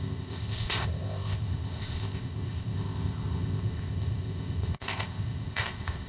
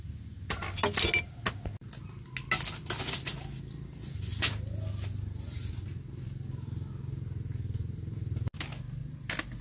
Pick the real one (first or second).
second